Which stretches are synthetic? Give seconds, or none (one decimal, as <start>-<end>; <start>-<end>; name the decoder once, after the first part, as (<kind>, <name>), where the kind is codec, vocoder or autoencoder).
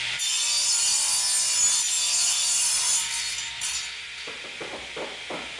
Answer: none